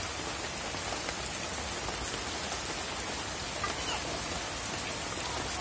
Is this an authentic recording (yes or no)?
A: yes